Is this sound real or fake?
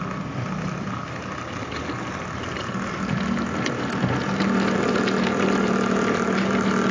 real